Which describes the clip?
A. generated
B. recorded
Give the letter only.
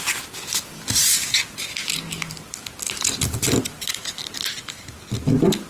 B